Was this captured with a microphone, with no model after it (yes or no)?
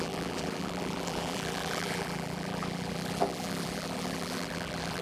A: no